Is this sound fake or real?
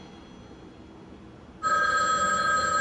real